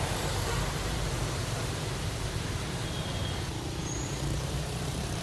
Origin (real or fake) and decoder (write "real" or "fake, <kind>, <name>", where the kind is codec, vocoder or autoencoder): fake, vocoder, BigVGAN v2